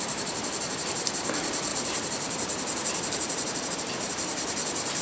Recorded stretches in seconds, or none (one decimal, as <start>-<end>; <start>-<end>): none